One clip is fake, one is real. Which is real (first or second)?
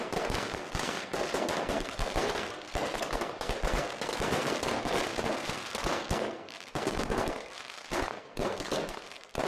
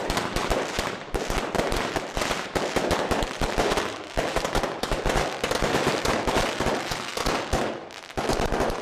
second